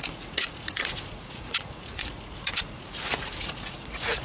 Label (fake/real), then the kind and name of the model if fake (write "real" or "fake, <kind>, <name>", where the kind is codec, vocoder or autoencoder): fake, vocoder, Vocos